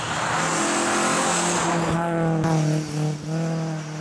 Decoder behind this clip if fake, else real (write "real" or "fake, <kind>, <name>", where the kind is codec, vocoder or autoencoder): real